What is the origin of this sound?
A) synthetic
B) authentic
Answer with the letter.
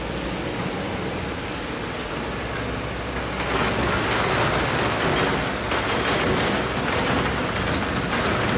B